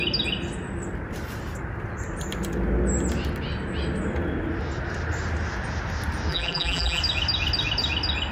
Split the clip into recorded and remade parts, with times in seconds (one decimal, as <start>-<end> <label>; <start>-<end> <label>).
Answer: 0.0-6.3 recorded; 6.3-7.0 remade; 7.0-8.3 recorded